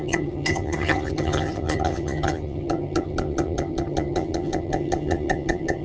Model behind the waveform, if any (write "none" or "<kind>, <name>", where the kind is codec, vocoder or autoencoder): vocoder, HiFi-GAN